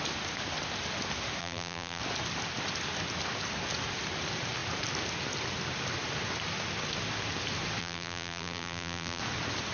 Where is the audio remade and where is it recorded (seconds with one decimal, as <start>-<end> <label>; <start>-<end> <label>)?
0.0-1.4 recorded; 1.4-2.0 remade; 2.0-7.8 recorded; 7.8-9.2 remade; 9.2-9.7 recorded